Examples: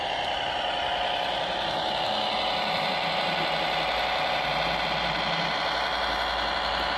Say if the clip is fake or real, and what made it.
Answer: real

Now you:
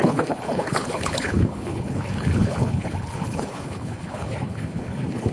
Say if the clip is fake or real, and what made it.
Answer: fake, codec, HILCodec